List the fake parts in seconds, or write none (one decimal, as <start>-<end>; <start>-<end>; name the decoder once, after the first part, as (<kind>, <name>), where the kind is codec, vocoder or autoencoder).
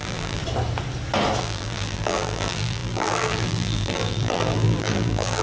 0.0-0.4 (vocoder, BigVGAN v2); 1.4-5.4